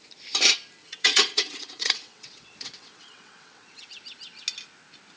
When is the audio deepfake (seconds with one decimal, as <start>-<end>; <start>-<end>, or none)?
0.8-3.9